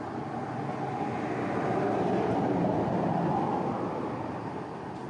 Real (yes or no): yes